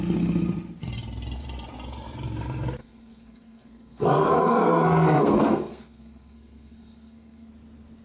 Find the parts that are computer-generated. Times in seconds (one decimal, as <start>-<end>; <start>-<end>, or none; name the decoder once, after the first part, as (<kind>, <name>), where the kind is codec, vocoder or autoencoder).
2.8-7.5 (codec, SNAC)